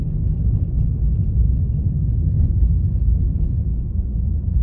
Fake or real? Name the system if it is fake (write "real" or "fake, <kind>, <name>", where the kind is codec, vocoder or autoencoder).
real